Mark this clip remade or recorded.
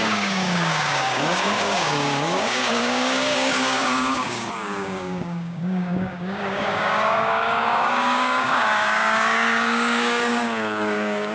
remade